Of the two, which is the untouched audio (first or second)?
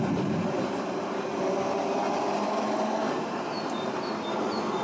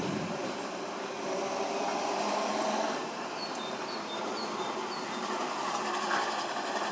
first